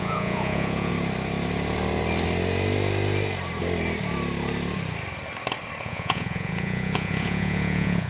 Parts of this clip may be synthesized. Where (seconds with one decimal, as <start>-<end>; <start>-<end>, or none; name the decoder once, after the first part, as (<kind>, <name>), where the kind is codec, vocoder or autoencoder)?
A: 0.0-0.9 (vocoder, Vocos); 5.8-8.1